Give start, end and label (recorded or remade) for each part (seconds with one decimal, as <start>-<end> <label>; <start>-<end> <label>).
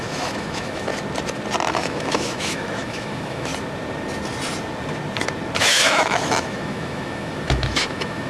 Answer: 0.0-0.9 remade; 0.9-1.7 recorded; 1.7-3.5 remade; 3.5-5.6 recorded; 5.6-8.3 remade